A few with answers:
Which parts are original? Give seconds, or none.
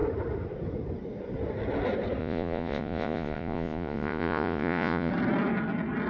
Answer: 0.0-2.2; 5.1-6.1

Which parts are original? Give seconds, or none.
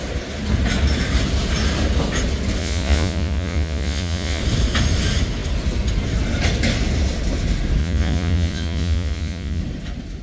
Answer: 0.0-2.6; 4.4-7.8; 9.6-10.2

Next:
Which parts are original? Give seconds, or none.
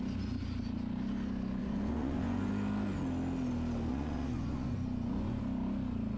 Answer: 0.0-1.6; 2.5-3.9; 5.4-6.2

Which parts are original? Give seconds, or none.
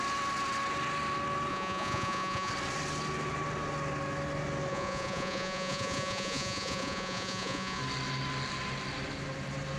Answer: 0.0-1.5; 2.5-4.7; 7.8-9.8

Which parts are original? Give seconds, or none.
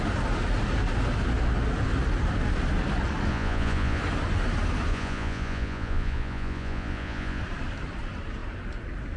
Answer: 0.0-3.3; 4.0-4.9; 7.4-9.2